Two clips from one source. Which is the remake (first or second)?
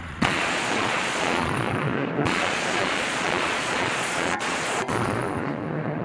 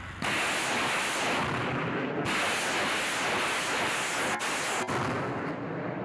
first